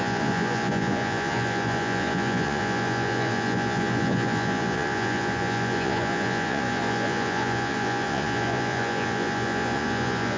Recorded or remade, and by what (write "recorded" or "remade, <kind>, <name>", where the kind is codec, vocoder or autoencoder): remade, vocoder, Vocos